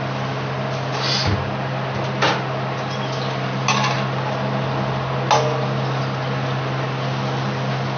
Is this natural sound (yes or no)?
yes